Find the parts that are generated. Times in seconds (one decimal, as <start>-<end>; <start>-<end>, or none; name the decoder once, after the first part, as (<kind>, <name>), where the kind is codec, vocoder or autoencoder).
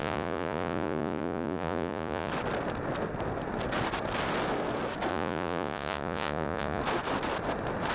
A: 0.0-2.3 (vocoder, Vocos); 5.1-6.8